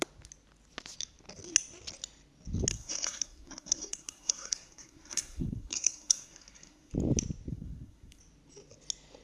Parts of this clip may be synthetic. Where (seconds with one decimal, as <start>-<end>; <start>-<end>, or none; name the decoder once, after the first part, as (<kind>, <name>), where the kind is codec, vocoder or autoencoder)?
2.7-6.9 (codec, SNAC); 7.5-8.2